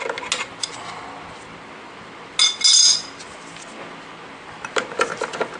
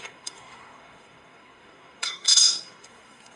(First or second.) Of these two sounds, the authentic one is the first